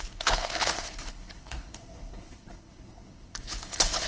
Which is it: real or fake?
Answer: fake